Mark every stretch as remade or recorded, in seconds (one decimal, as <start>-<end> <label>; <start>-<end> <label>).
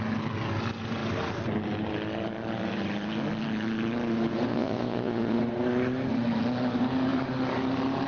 0.0-4.5 recorded; 4.5-5.4 remade; 5.4-8.1 recorded